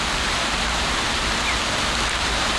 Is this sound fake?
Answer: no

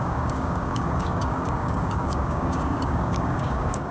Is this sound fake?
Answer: yes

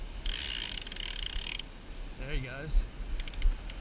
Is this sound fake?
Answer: no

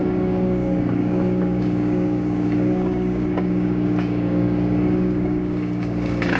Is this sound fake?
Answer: yes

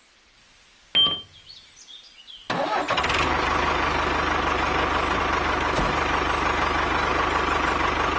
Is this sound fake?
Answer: no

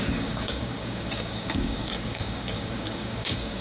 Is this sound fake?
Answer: yes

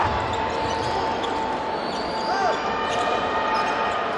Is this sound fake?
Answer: no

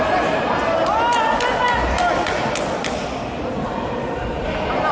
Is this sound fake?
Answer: no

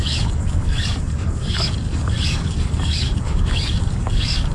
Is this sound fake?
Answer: yes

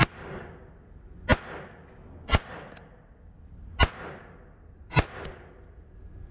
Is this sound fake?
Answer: no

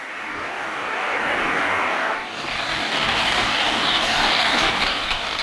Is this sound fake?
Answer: yes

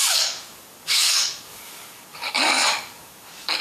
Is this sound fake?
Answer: yes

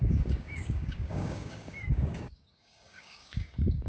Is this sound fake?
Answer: yes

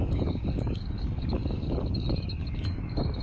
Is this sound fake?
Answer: yes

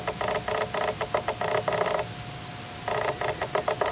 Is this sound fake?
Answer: no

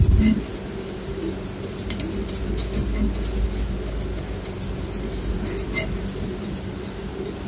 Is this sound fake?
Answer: no